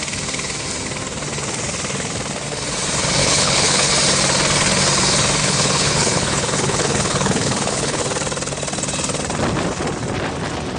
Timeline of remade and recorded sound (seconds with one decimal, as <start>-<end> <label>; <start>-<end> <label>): 0.0-3.2 recorded; 3.2-3.9 remade; 3.9-5.4 recorded; 5.4-8.0 remade; 8.0-10.8 recorded